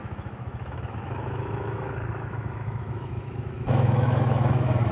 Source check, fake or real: fake